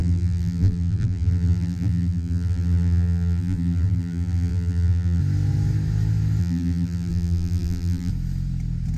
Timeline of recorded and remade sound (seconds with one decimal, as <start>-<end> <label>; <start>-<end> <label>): 0.0-5.2 remade; 5.2-6.4 recorded; 6.4-8.1 remade; 8.1-9.0 recorded